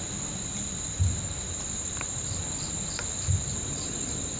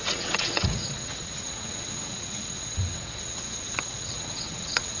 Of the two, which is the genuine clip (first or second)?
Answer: first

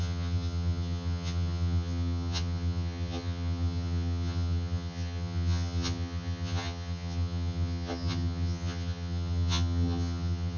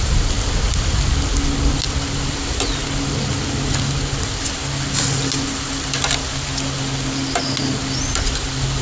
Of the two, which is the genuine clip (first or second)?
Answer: second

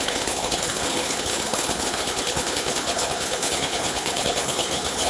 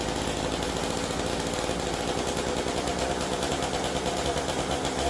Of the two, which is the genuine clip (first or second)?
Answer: second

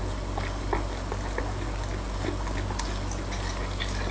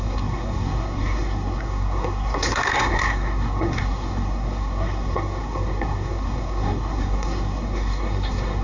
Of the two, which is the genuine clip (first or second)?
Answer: first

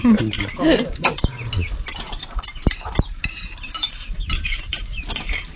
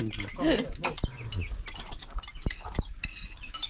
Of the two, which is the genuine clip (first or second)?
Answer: second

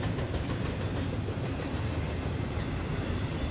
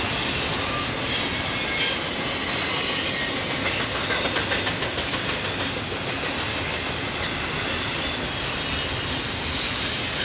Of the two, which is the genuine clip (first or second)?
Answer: second